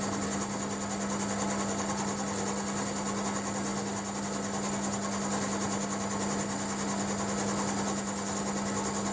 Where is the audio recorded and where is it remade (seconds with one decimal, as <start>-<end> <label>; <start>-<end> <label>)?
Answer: 0.0-9.1 recorded

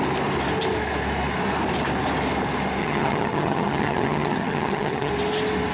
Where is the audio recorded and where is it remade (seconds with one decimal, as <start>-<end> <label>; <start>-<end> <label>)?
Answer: 0.0-2.8 recorded; 2.8-5.1 remade; 5.1-5.7 recorded

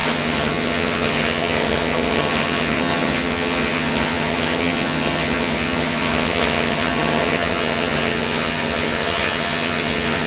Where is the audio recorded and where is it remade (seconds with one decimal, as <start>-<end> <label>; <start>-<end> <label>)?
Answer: 0.0-10.3 remade

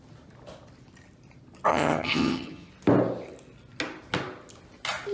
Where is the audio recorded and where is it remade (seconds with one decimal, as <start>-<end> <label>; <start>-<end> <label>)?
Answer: 0.0-1.7 recorded; 1.7-2.7 remade; 2.7-5.1 recorded

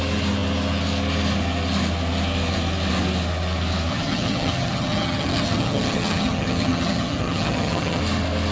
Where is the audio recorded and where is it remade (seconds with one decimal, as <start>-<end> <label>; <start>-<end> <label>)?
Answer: 0.0-3.9 recorded; 3.9-8.0 remade; 8.0-8.5 recorded

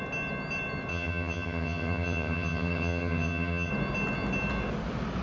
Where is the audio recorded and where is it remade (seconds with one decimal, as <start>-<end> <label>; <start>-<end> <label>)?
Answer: 0.0-0.9 recorded; 0.9-3.7 remade; 3.7-5.2 recorded

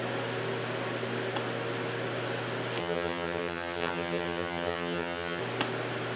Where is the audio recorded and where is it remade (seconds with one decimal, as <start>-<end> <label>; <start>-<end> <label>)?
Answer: 0.0-2.8 recorded; 2.8-5.4 remade; 5.4-6.2 recorded

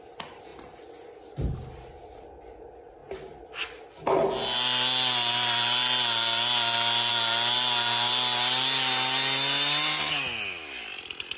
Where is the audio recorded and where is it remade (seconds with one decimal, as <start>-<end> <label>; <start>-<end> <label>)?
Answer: 0.0-11.4 recorded